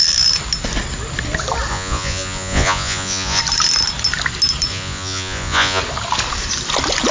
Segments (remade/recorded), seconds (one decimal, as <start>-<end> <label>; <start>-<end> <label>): 0.0-1.7 recorded; 1.7-3.4 remade; 3.4-4.7 recorded; 4.7-5.8 remade; 5.8-7.1 recorded